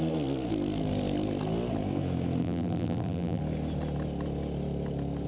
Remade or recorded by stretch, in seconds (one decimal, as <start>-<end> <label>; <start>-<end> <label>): 0.0-2.4 recorded; 2.4-3.4 remade; 3.4-5.3 recorded